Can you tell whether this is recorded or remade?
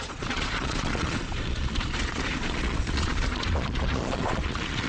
remade